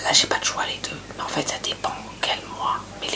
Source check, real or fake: real